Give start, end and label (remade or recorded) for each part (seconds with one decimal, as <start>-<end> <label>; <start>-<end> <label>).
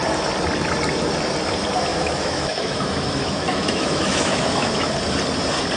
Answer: 0.0-1.9 recorded; 1.9-4.9 remade; 4.9-5.8 recorded